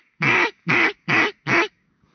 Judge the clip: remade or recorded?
remade